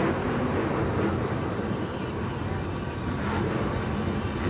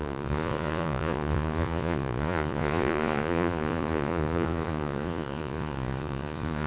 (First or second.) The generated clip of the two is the second